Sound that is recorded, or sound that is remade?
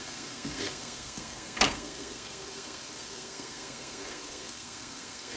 remade